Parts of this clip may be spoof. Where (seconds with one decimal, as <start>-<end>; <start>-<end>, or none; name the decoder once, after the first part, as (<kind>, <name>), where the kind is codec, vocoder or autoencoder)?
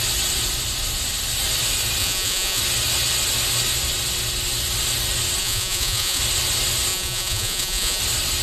2.0-2.6 (vocoder, Vocos); 5.4-6.2; 6.9-8.0